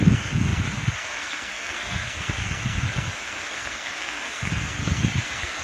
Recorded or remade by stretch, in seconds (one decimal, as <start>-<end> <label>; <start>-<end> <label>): 0.0-5.6 remade